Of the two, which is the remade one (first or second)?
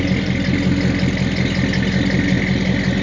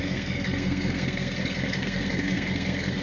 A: second